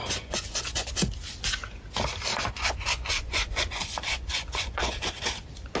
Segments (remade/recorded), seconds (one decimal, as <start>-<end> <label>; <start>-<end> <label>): 0.0-0.9 remade; 0.9-2.3 recorded; 2.3-5.2 remade; 5.2-5.8 recorded

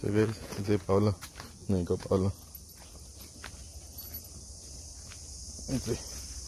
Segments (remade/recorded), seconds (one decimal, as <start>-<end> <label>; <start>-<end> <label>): 0.0-1.2 remade; 1.2-1.6 recorded; 1.6-2.3 remade; 2.3-6.5 recorded